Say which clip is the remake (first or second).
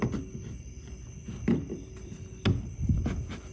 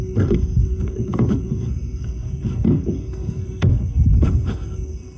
second